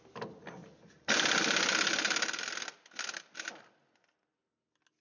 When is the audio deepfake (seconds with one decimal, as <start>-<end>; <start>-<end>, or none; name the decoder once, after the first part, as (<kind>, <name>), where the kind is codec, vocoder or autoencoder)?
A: none